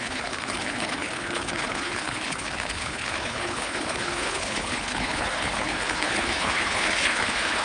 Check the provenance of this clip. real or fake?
fake